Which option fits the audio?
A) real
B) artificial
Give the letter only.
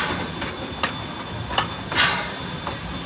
A